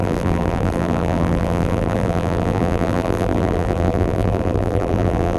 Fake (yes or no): yes